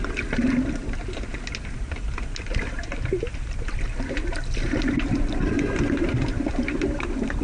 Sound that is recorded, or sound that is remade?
recorded